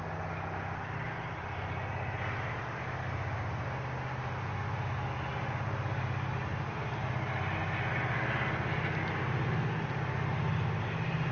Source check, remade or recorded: recorded